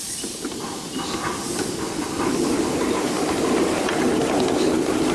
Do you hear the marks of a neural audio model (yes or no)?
no